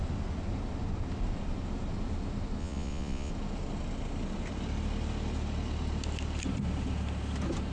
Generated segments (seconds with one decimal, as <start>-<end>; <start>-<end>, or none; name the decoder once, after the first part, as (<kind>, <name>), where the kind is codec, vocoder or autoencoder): 2.6-3.3 (vocoder, Vocos)